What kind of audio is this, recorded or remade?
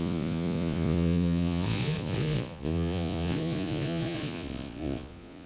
remade